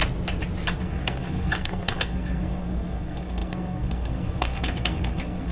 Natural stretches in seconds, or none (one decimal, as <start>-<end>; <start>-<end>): 0.0-0.8